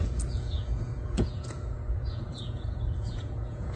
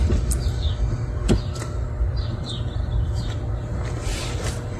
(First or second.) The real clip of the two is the second